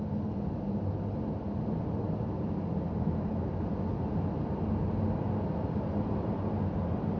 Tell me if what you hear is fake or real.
real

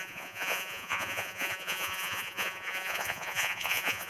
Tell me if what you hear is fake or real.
fake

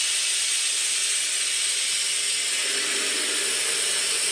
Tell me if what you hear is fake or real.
real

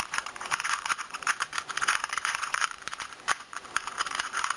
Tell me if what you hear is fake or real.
fake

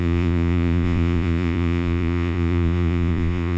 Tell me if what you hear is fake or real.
fake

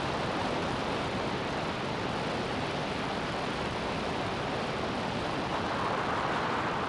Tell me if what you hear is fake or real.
real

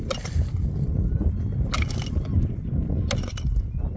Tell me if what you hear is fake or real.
real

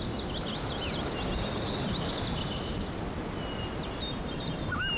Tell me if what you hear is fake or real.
real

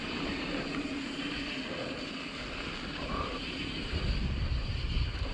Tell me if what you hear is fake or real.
real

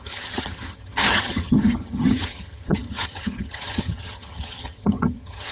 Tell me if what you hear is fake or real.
fake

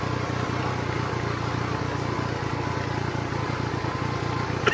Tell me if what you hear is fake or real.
real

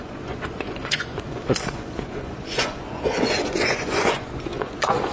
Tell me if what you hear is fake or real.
fake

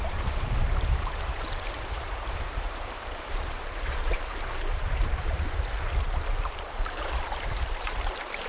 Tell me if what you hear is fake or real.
fake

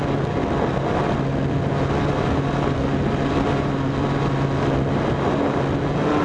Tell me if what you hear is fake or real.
real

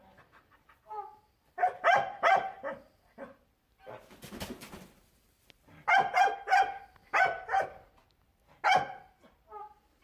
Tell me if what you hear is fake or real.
real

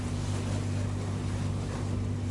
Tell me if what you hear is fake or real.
real